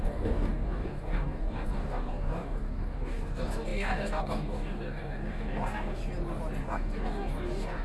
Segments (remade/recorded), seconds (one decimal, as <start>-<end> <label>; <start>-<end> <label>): 0.0-6.0 remade; 6.0-6.6 recorded; 6.6-7.8 remade